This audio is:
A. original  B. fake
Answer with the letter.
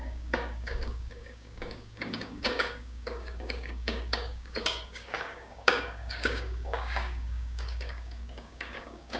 B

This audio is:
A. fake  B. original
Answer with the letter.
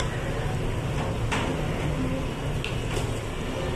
B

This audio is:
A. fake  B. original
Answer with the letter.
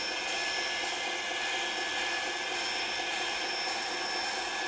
B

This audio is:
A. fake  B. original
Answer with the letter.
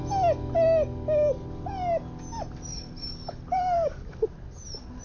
B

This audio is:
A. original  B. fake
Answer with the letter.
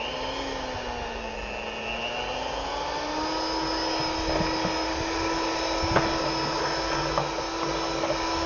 A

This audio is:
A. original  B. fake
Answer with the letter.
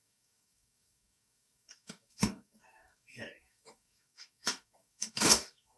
B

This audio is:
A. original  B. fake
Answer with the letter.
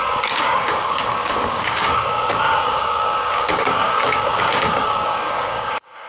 B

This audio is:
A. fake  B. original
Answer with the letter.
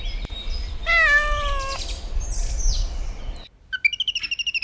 B